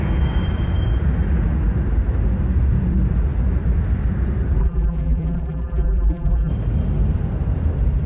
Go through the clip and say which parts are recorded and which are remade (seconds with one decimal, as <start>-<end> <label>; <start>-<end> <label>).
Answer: 0.0-4.6 recorded; 4.6-6.5 remade; 6.5-8.1 recorded